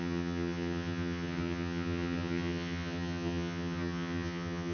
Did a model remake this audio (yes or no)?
yes